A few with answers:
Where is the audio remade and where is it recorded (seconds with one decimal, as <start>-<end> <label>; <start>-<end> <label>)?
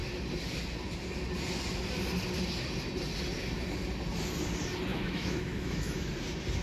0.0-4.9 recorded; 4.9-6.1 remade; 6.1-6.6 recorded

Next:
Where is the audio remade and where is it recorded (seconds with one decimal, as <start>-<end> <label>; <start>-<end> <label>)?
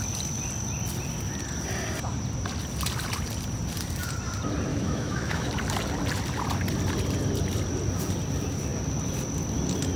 0.0-4.7 recorded; 4.7-5.5 remade; 5.5-10.0 recorded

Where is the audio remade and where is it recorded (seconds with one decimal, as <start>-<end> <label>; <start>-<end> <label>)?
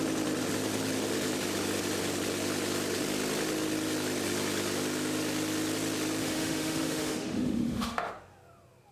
0.0-6.2 recorded; 6.2-8.1 remade; 8.1-8.9 recorded